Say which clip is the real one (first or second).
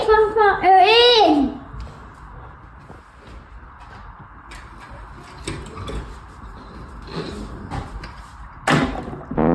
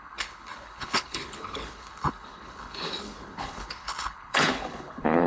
first